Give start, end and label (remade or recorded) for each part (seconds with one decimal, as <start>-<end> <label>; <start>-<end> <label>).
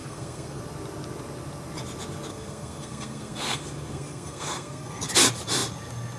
0.0-0.6 remade; 0.6-2.3 recorded; 2.3-5.1 remade; 5.1-6.2 recorded